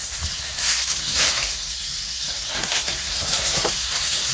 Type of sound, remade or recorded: remade